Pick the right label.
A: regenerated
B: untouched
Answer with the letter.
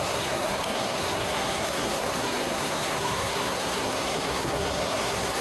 A